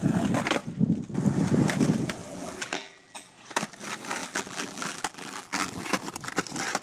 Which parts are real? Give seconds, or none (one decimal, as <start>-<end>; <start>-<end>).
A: 0.0-2.2; 3.3-4.2; 5.8-6.8